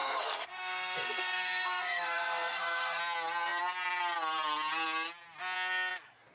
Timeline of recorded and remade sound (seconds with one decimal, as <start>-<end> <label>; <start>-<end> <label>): 0.0-3.0 remade; 3.0-6.3 recorded